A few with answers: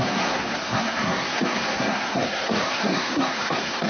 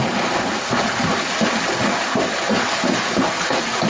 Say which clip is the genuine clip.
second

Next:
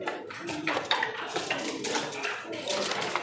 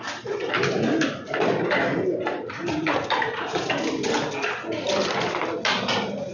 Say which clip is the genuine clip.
second